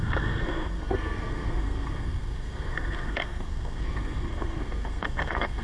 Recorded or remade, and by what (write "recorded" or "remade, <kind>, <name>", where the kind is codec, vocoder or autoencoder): remade, codec, SNAC